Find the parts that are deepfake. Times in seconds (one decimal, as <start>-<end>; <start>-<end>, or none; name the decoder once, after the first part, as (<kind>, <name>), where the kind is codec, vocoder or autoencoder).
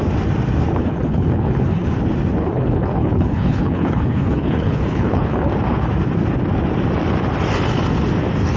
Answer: 0.8-1.9 (codec, HILCodec); 2.4-5.5